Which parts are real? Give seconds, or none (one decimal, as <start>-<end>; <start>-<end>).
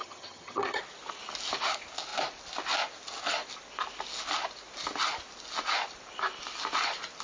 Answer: 0.8-7.2